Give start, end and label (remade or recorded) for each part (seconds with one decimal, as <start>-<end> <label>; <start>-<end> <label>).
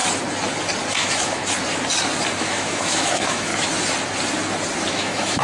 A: 0.0-0.9 recorded; 0.9-1.4 remade; 1.4-2.4 recorded; 2.4-3.5 remade; 3.5-4.9 recorded; 4.9-5.4 remade